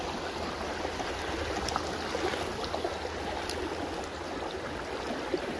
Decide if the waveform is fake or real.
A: real